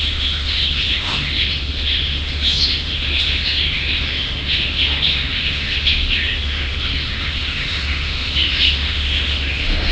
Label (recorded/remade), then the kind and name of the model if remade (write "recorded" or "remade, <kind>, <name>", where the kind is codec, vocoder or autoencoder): remade, autoencoder, DAC-VAE